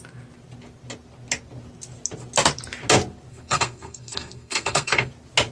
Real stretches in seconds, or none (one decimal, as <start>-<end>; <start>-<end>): 0.0-3.3; 5.1-5.5